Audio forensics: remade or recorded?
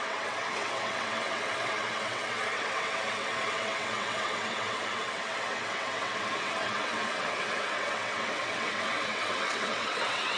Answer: remade